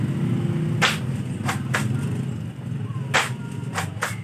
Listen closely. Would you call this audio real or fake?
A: real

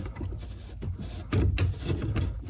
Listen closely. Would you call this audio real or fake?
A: real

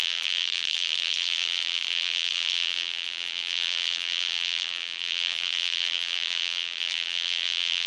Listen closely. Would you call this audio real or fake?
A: fake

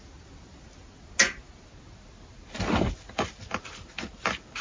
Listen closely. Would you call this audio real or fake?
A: real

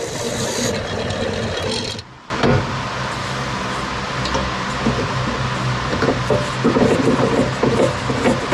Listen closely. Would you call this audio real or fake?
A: real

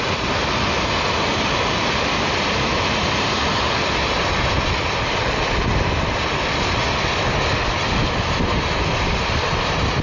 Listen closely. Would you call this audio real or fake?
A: real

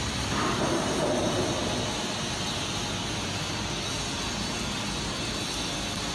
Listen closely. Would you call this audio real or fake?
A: real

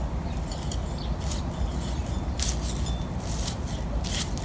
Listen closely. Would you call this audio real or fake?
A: real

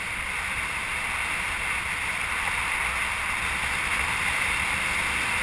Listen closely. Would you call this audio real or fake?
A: real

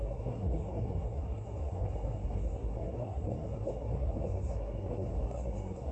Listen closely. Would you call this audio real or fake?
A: fake